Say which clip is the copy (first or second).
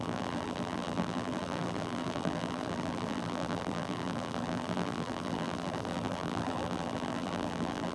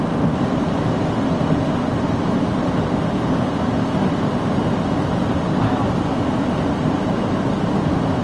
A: first